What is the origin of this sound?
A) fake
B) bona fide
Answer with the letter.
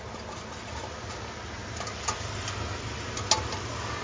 B